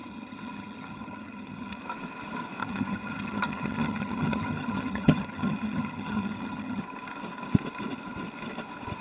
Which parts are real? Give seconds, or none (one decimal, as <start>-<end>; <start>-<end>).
1.8-2.6; 6.8-9.0